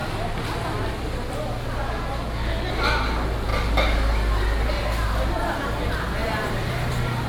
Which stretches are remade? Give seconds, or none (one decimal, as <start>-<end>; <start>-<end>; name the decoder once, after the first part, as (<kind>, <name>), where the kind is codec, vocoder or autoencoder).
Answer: 6.2-7.3 (vocoder, BigVGAN v2)

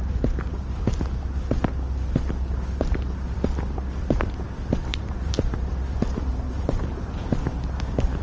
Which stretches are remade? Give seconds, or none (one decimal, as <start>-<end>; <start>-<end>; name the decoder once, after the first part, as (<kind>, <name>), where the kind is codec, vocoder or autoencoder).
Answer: 4.9-5.7 (vocoder, BigVGAN v2); 6.3-6.9

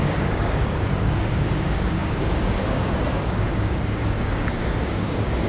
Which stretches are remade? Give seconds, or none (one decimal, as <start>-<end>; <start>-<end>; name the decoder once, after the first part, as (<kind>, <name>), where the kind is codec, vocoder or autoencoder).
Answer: 0.0-5.5 (codec, DAC)

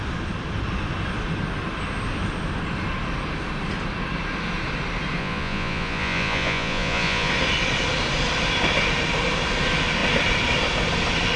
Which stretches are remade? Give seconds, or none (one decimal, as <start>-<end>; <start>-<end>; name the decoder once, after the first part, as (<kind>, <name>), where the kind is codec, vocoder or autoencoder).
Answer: 5.2-7.3 (vocoder, Vocos)